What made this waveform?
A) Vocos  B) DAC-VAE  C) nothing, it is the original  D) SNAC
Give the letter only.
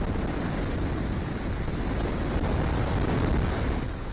C